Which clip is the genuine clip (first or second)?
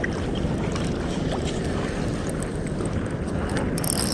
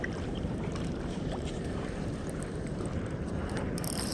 first